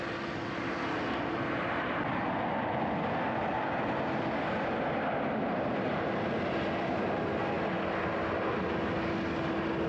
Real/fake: real